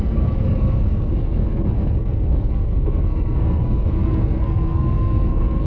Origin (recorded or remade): remade